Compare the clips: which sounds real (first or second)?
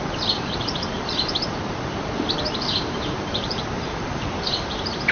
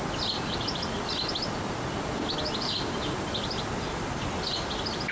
second